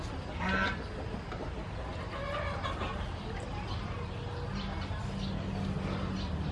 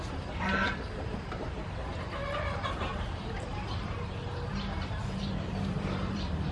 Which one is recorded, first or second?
first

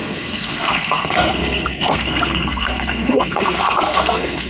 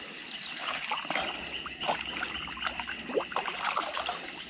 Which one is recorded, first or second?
second